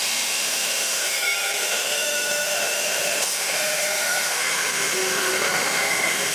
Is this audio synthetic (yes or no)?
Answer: yes